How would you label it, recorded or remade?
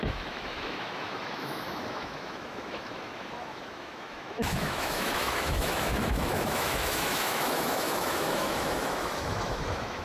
remade